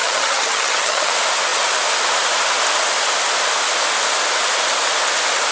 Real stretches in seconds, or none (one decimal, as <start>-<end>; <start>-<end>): 1.1-5.5